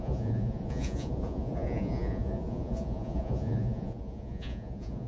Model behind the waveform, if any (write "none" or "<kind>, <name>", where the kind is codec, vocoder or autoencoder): vocoder, Vocos